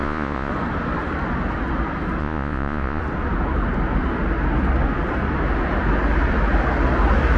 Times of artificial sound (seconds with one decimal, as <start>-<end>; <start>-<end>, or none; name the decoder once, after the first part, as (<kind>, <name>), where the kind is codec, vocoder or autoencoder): 0.0-0.5 (vocoder, Vocos); 2.2-3.0